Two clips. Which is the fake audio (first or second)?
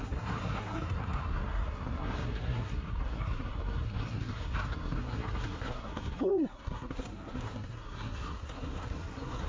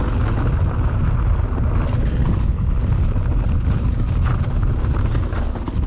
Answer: first